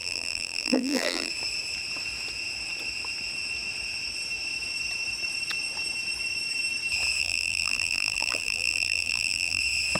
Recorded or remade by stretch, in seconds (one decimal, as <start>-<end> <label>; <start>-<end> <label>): 0.0-1.3 remade; 1.3-7.2 recorded; 7.2-9.6 remade; 9.6-10.0 recorded